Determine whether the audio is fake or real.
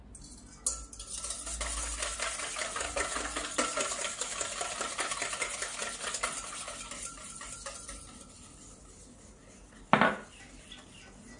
real